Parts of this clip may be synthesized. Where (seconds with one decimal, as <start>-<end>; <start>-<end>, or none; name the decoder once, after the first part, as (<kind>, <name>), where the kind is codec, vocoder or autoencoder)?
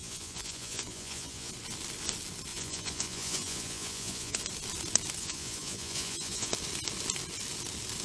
0.0-1.5 (vocoder, Vocos); 2.5-4.4; 5.2-6.5